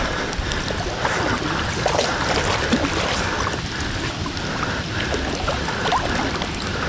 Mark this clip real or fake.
real